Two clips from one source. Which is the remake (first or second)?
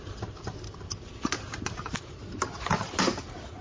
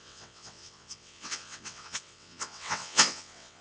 second